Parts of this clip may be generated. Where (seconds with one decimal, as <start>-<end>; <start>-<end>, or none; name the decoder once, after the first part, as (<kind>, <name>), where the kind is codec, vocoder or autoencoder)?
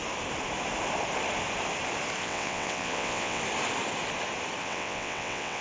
2.2-3.4 (vocoder, WaveNeXt); 4.6-5.6